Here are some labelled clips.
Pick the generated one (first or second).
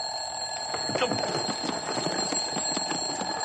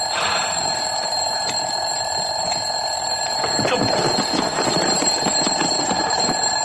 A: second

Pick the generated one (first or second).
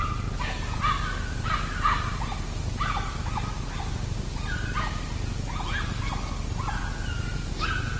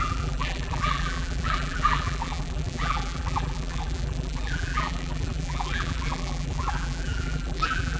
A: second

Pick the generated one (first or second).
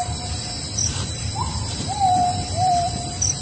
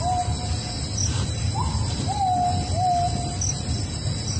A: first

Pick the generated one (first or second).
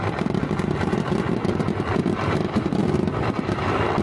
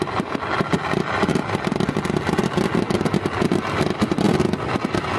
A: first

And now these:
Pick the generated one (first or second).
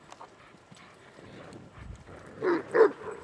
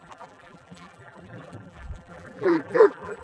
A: second